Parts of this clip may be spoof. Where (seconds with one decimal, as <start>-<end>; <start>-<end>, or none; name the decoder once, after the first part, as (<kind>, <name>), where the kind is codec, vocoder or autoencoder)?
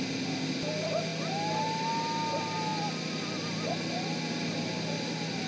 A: none